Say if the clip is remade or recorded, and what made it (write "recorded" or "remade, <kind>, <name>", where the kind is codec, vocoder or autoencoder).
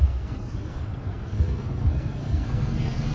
remade, codec, SNAC